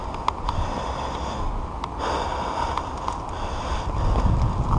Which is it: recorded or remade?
recorded